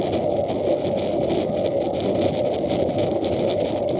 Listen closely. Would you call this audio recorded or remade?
recorded